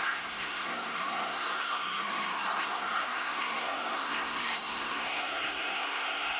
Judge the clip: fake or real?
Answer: fake